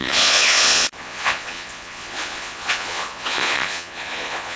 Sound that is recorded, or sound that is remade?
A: remade